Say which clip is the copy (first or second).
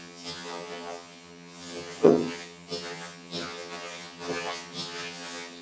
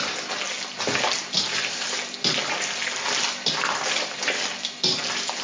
first